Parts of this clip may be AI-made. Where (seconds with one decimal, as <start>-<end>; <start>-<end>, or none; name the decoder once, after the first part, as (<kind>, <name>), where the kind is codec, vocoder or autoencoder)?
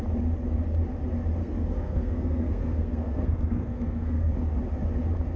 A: 1.4-4.3 (codec, SNAC)